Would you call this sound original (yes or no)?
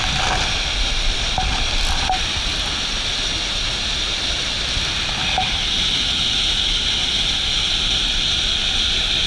yes